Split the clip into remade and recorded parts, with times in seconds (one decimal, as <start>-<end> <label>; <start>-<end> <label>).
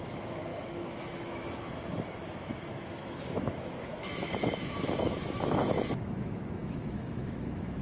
0.0-7.8 remade